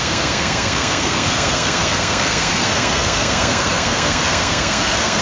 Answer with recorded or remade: remade